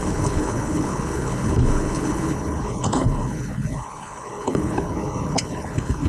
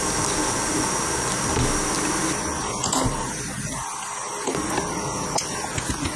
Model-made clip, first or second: first